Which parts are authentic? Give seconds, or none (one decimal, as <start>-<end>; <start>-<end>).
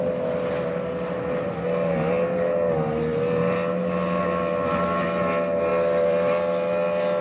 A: 0.0-7.2